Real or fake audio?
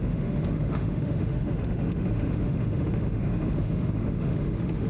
fake